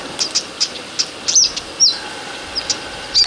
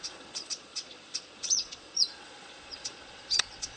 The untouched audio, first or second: first